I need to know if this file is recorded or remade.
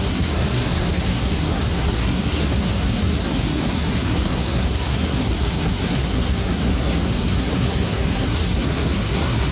remade